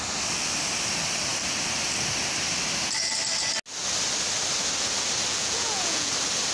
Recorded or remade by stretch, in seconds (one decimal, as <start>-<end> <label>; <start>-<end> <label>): 0.0-5.3 recorded; 5.3-6.1 remade; 6.1-6.5 recorded